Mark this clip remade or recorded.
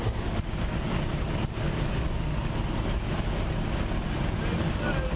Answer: recorded